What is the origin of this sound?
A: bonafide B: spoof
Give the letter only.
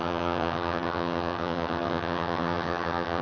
B